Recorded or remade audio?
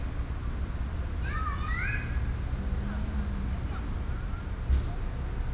recorded